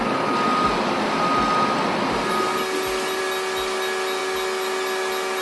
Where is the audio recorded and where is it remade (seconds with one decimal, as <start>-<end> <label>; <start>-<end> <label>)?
0.0-5.4 recorded